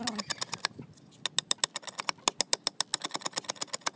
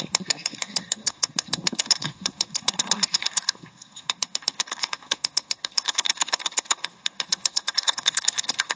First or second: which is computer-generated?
second